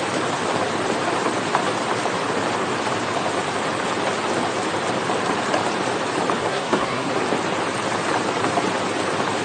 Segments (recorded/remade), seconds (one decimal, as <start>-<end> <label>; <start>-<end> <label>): 0.0-6.4 recorded; 6.4-7.1 remade; 7.1-9.4 recorded

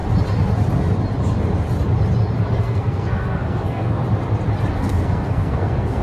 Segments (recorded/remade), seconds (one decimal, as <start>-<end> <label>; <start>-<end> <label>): 0.0-2.6 recorded; 2.6-4.0 remade; 4.0-4.7 recorded; 4.7-6.0 remade

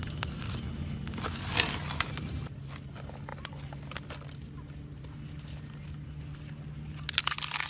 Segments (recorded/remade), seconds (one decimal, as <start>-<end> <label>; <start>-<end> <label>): 0.0-7.7 recorded